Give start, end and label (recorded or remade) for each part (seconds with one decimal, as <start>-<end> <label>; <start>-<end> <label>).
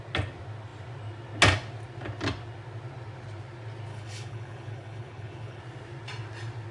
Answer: 0.0-3.9 recorded; 3.9-5.6 remade; 5.6-6.7 recorded